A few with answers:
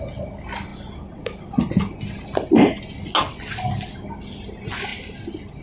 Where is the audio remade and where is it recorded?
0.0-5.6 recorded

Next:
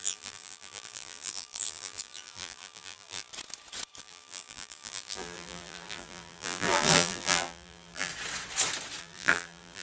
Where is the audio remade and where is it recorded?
0.0-3.3 remade; 3.3-4.0 recorded; 4.0-8.1 remade; 8.1-9.0 recorded; 9.0-9.8 remade